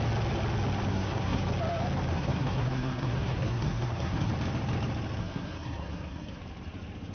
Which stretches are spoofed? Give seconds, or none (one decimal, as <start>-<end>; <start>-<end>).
0.9-1.4; 2.1-4.3; 5.2-6.4